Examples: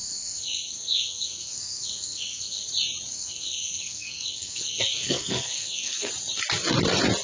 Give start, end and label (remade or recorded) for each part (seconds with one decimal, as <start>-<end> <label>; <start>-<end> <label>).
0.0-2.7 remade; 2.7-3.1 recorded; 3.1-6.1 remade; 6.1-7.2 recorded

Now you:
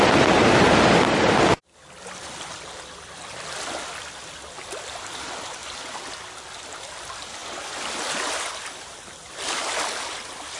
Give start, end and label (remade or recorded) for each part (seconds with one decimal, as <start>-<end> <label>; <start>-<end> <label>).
0.0-10.6 recorded

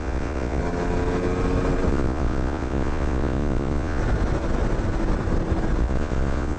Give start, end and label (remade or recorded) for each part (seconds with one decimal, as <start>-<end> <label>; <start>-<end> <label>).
0.0-0.6 remade; 0.6-1.9 recorded; 1.9-4.0 remade; 4.0-5.8 recorded; 5.8-6.6 remade

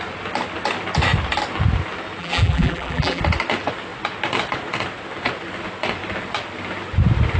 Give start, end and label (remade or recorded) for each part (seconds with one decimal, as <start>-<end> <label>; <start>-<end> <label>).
0.0-2.2 recorded; 2.2-3.2 remade; 3.2-7.4 recorded